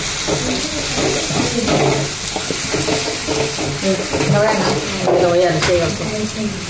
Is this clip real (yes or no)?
yes